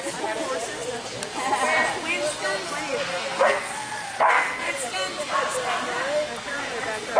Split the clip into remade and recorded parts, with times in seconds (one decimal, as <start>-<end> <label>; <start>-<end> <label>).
0.0-3.1 recorded; 3.1-4.7 remade; 4.7-7.2 recorded